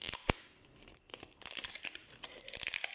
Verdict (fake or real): fake